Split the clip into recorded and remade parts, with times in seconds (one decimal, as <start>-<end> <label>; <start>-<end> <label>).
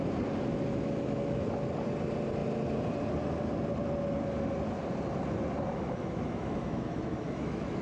0.0-0.7 recorded; 0.7-1.6 remade; 1.6-5.7 recorded; 5.7-7.8 remade